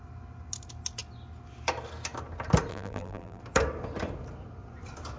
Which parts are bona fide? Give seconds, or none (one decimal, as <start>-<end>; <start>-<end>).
0.0-2.7; 3.4-5.2